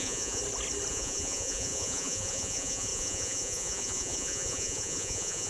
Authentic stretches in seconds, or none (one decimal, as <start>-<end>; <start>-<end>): 0.4-0.9